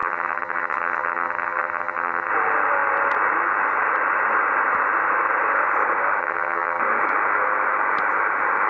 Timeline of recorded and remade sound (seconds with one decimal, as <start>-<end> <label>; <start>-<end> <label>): 0.0-2.3 remade; 2.3-6.2 recorded; 6.2-6.8 remade; 6.8-8.7 recorded